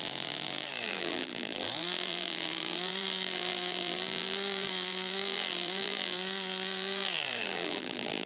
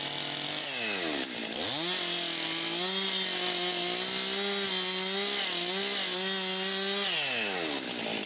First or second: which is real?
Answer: second